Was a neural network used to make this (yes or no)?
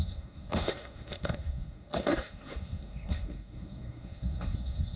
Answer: yes